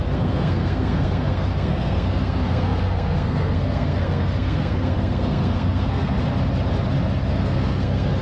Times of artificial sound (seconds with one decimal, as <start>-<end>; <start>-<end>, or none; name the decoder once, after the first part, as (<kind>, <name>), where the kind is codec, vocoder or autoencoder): 0.0-6.2 (codec, SNAC); 7.3-8.2